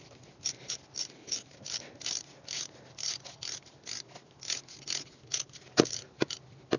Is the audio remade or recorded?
recorded